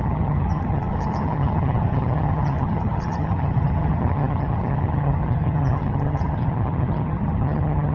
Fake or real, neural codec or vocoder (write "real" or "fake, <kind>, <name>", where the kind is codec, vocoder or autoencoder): fake, vocoder, HiFi-GAN